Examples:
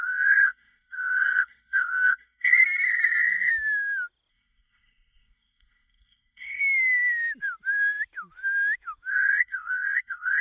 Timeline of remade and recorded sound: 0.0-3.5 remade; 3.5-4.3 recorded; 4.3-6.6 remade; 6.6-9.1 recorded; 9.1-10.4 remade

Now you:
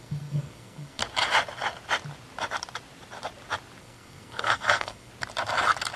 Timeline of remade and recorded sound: 0.0-1.0 remade; 1.0-3.8 recorded; 3.8-5.1 remade; 5.1-6.0 recorded

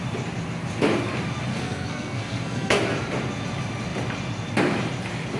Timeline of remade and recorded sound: 0.0-1.5 recorded; 1.5-2.8 remade; 2.8-5.4 recorded

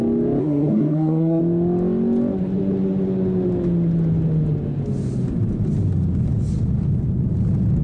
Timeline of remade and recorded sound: 0.0-0.4 recorded; 0.4-1.4 remade; 1.4-7.8 recorded

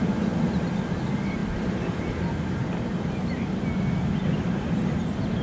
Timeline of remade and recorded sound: 0.0-5.4 recorded

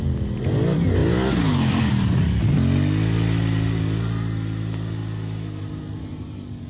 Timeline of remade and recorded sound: 0.0-6.7 recorded

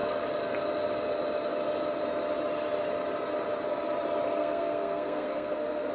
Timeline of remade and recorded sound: 0.0-4.4 recorded; 4.4-5.9 remade